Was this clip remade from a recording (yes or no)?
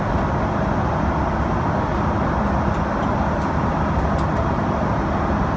no